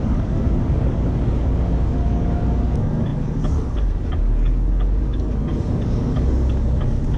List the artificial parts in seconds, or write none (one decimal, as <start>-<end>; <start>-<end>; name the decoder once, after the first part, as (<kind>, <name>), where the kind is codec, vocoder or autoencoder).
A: 0.0-7.2 (codec, DAC)